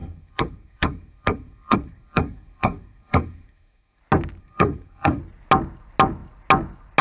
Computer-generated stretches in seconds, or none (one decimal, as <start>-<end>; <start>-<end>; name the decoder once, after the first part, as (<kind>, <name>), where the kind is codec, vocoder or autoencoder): 0.0-4.0 (codec, SNAC); 4.4-5.2